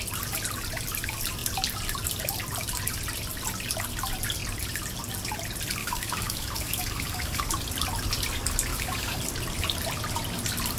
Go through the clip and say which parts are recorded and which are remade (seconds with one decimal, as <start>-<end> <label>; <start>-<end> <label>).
0.0-5.8 recorded; 5.8-7.5 remade; 7.5-8.7 recorded; 8.7-9.2 remade; 9.2-10.8 recorded